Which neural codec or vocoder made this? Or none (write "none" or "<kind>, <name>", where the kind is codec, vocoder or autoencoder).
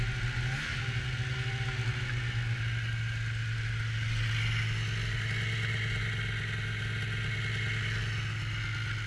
none